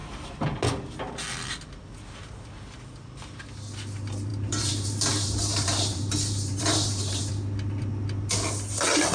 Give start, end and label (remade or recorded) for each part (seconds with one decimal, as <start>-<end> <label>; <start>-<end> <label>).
0.0-4.3 recorded; 4.3-7.3 remade; 7.3-9.1 recorded